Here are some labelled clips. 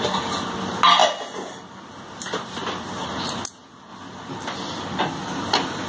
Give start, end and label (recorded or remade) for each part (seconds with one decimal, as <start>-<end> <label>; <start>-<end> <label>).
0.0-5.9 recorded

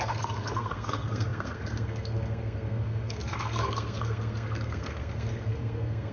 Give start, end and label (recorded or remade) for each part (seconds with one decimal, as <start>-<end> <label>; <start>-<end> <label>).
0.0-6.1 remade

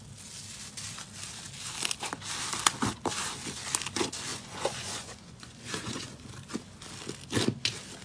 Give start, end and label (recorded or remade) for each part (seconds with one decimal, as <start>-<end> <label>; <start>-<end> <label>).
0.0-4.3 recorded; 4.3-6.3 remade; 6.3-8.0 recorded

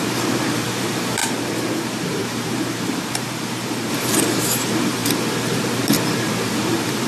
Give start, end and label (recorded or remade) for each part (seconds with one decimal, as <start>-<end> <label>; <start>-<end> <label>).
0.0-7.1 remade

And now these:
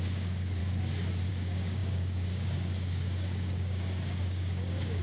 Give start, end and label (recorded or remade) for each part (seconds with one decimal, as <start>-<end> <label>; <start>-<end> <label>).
0.0-0.6 remade; 0.6-1.3 recorded; 1.3-5.0 remade